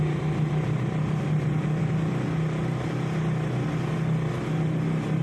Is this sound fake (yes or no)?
no